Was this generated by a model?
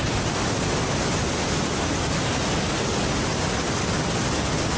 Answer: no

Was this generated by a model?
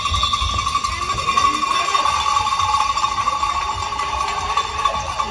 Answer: no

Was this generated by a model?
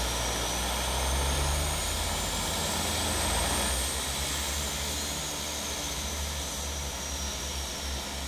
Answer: no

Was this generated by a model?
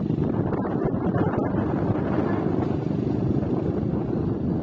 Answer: no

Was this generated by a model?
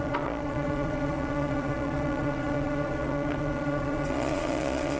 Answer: yes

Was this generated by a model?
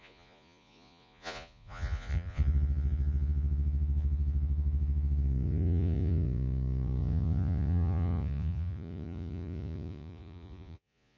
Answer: yes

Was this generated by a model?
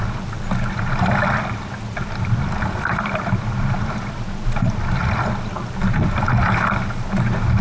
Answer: no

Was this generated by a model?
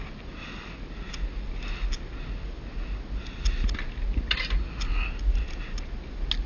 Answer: no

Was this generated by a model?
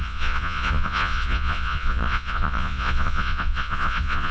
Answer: yes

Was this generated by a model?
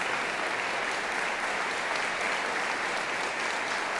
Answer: no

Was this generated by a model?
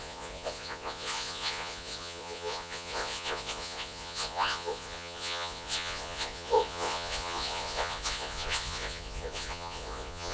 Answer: yes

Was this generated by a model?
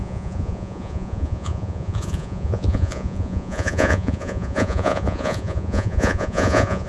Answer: yes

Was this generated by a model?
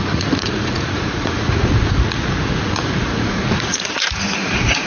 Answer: yes